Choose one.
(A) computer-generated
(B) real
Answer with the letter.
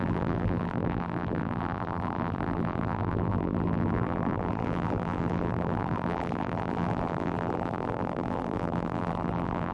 A